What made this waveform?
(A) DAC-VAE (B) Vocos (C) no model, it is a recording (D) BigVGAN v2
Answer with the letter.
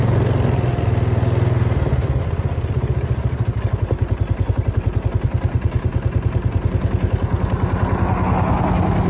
C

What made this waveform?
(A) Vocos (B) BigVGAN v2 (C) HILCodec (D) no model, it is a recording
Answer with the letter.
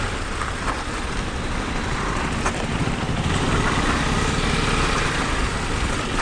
D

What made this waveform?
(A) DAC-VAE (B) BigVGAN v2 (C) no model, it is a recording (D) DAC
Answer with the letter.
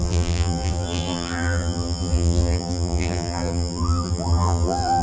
B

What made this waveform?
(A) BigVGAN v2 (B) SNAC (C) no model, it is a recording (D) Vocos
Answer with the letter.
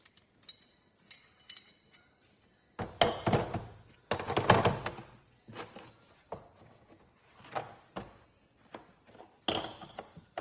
C